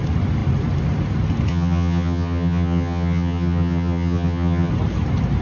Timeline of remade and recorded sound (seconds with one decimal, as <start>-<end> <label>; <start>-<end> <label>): 0.0-1.5 recorded; 1.5-4.7 remade; 4.7-5.4 recorded